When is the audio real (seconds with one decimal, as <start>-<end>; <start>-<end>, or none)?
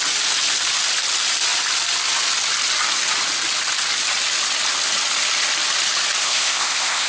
0.0-6.2